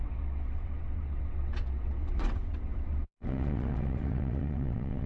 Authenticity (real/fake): fake